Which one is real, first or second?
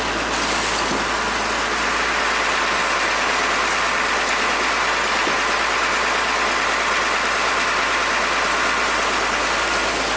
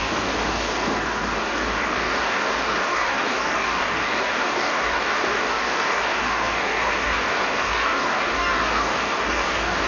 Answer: first